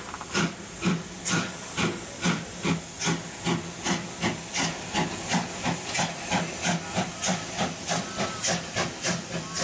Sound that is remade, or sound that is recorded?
recorded